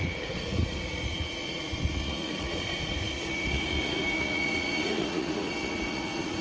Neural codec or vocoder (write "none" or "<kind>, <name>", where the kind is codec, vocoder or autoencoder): vocoder, Vocos